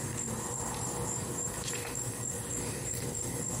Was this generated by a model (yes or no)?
yes